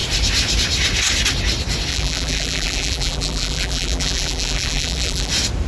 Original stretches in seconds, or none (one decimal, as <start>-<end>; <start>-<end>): 0.0-1.9; 5.3-5.7